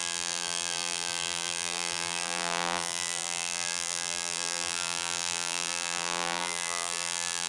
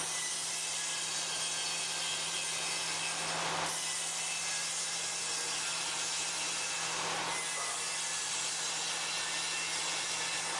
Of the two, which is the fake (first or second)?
first